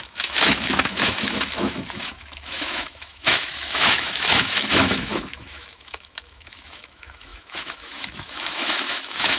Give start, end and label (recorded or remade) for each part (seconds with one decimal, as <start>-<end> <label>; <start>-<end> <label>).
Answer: 0.0-9.4 remade

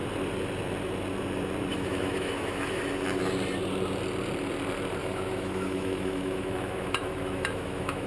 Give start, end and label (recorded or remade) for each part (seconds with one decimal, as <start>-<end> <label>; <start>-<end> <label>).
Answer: 0.0-1.7 recorded; 1.7-2.8 remade; 2.8-5.0 recorded; 5.0-8.1 remade

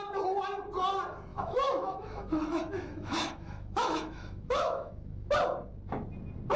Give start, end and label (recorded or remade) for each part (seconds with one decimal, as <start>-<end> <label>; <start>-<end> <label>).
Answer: 0.0-1.3 recorded; 1.3-5.3 remade; 5.3-6.6 recorded

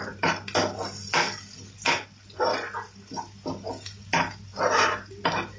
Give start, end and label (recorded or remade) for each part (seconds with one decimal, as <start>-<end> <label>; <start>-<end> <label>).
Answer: 0.0-5.6 recorded